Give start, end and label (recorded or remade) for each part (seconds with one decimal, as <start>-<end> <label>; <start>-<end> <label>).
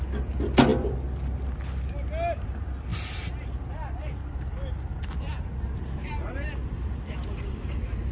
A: 0.0-8.1 recorded